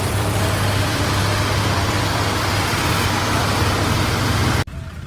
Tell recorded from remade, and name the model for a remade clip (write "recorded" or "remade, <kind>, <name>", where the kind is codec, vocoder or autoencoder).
remade, vocoder, BigVGAN v2